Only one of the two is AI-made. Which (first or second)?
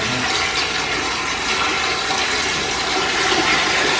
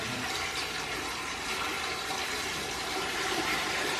second